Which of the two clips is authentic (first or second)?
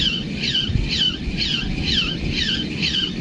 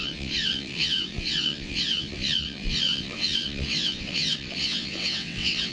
first